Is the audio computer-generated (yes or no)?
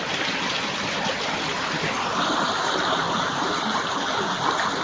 no